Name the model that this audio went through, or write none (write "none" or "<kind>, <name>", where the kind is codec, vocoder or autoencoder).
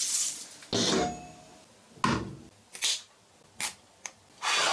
none